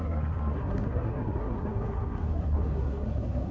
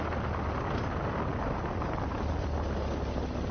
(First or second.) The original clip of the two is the second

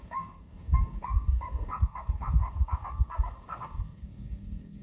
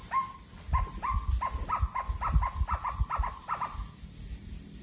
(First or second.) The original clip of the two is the second